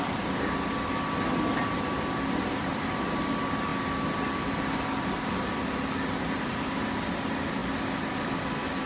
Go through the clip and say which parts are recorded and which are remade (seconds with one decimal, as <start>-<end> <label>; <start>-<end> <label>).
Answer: 0.0-8.9 recorded